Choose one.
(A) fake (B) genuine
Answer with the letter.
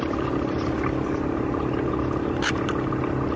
B